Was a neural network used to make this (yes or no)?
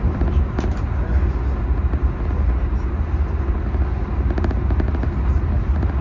no